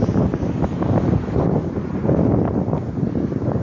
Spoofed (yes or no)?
yes